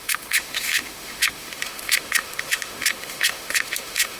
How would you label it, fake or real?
fake